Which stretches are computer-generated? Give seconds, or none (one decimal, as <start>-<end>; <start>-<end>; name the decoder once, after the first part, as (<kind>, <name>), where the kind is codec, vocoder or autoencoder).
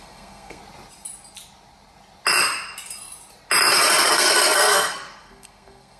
0.0-0.6 (codec, SNAC); 4.1-6.0